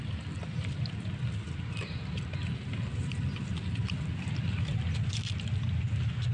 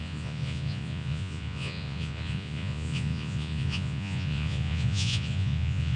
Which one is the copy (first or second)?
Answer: second